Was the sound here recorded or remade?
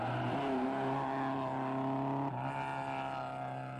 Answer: recorded